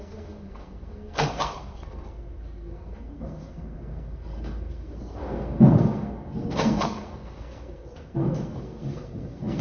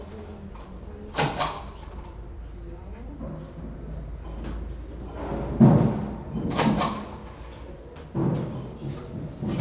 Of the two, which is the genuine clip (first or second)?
second